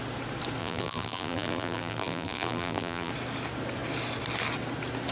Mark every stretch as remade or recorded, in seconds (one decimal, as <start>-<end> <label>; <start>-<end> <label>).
0.0-0.6 recorded; 0.6-3.1 remade; 3.1-5.1 recorded